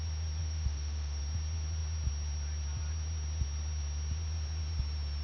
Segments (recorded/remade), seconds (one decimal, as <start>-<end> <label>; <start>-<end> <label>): 0.0-0.4 recorded; 0.4-1.2 remade; 1.2-5.2 recorded